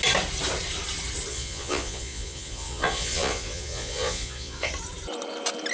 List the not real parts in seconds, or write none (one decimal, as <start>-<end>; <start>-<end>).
1.3-4.7